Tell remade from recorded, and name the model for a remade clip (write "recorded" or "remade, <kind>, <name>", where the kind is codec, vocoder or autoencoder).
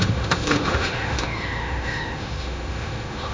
remade, autoencoder, DAC-VAE